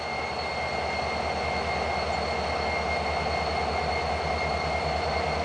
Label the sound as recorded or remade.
recorded